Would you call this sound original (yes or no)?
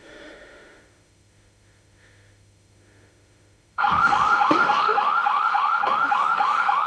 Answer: no